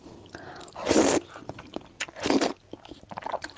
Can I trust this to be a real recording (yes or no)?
yes